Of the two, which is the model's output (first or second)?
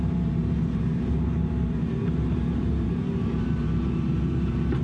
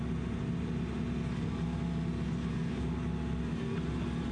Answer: first